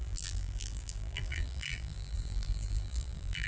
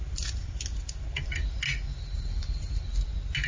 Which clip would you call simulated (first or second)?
first